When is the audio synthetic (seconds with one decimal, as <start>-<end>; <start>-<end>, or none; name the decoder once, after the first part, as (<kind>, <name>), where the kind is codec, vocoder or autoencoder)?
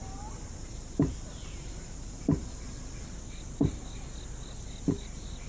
0.0-2.4 (vocoder, BigVGAN v2); 5.0-5.5